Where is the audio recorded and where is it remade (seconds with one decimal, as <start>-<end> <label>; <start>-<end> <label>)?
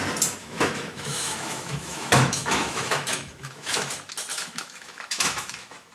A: 0.0-0.4 recorded; 0.4-3.9 remade; 3.9-4.3 recorded; 4.3-5.9 remade